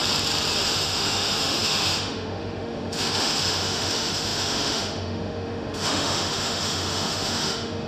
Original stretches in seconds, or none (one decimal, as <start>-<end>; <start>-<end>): 0.0-0.6